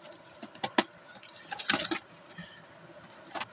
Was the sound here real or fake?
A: real